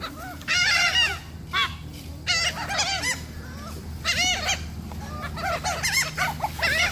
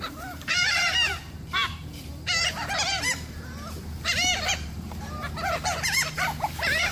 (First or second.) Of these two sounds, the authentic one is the first